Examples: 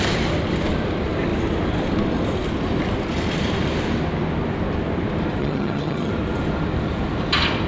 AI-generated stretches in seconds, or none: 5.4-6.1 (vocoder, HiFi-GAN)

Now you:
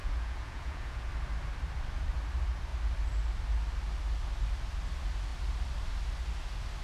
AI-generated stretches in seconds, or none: 0.0-1.1 (vocoder, Vocos)

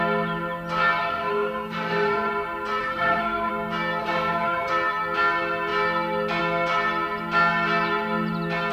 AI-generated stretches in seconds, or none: 1.0-2.3 (codec, SNAC); 2.8-3.5; 4.0-4.7

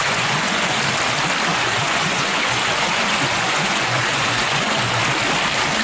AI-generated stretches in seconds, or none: 0.0-0.8 (vocoder, Vocos); 1.5-5.0

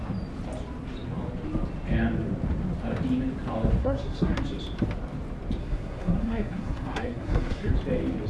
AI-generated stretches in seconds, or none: 3.8-4.4 (codec, SNAC); 5.6-7.7